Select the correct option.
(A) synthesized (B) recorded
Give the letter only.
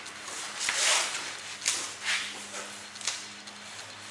B